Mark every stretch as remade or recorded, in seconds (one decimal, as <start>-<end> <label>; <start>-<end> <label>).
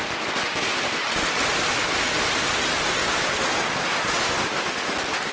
0.0-5.3 recorded